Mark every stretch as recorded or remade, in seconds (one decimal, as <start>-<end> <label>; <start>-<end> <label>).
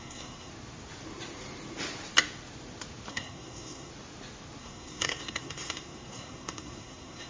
0.0-0.5 remade; 0.5-3.1 recorded; 3.1-3.9 remade; 3.9-4.6 recorded; 4.6-7.3 remade